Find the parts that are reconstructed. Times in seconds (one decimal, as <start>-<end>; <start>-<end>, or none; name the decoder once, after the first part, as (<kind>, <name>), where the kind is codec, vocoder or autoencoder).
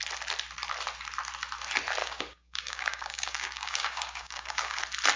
2.0-4.8 (codec, DAC)